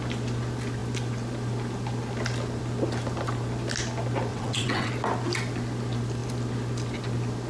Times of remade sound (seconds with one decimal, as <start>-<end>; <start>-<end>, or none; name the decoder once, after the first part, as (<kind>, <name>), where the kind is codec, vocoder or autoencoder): 4.3-4.9 (vocoder, WaveNeXt)